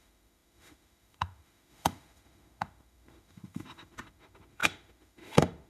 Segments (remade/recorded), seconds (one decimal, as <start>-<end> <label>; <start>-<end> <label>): 0.0-5.7 remade